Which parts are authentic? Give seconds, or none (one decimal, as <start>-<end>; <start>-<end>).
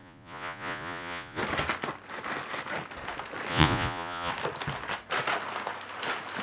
1.4-3.5; 4.3-6.4